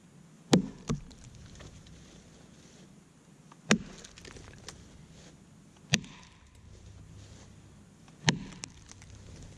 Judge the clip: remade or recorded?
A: recorded